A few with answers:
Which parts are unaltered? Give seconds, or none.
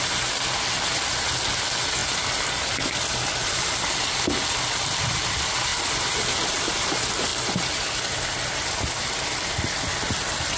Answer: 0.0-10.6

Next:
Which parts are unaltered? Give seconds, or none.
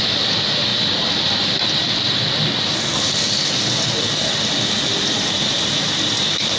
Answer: 0.0-6.6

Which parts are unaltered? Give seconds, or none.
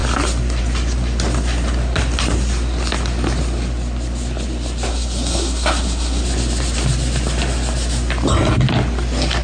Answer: 0.0-4.9; 6.2-9.4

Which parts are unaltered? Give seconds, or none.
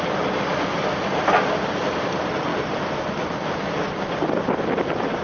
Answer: 0.0-5.2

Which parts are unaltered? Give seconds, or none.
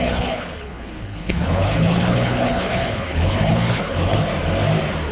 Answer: 4.3-5.1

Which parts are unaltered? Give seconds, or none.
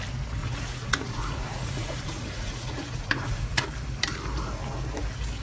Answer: 0.0-0.4; 3.6-5.4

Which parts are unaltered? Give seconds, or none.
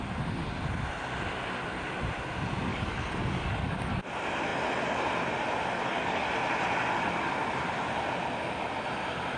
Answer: 0.0-2.7; 4.0-5.8; 6.3-9.4